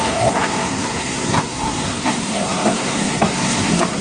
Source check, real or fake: fake